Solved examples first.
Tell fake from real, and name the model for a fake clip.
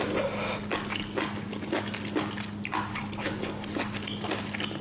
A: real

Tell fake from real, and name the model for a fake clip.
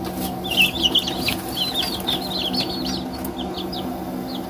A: real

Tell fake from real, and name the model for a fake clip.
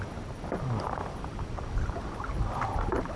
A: real